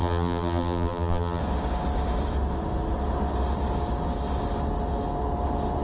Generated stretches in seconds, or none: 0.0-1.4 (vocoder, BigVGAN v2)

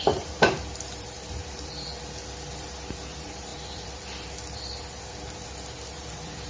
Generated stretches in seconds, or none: 0.0-1.9 (vocoder, BigVGAN v2); 2.6-6.5